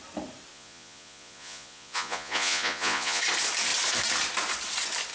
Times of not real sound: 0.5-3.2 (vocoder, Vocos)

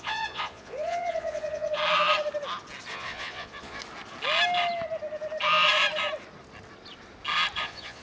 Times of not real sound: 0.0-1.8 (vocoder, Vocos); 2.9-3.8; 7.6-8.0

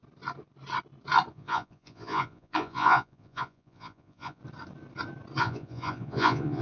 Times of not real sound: 1.3-4.4 (vocoder, Vocos); 5.4-6.6

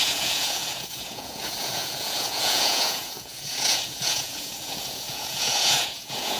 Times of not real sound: 0.0-6.4 (vocoder, Vocos)

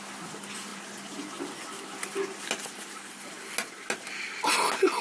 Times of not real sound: none

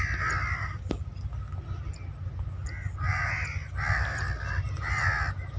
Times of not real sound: none

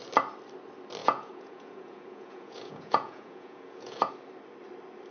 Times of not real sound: 1.0-4.1 (vocoder, Vocos)

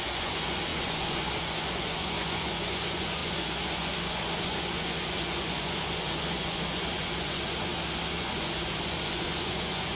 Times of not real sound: 0.0-7.7 (vocoder, Vocos); 8.2-9.9